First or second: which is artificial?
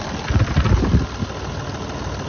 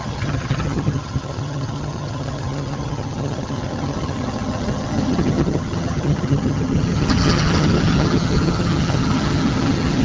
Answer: second